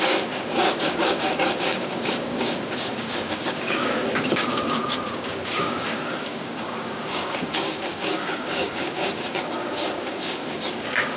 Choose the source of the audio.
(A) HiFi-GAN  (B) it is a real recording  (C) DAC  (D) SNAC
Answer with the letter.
C